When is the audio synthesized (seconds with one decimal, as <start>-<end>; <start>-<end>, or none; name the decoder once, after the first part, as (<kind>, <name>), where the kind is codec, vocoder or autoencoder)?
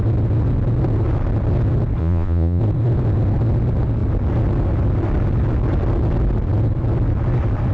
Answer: 2.0-2.6 (vocoder, Vocos)